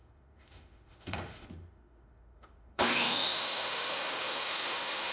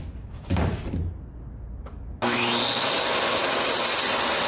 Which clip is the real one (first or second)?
second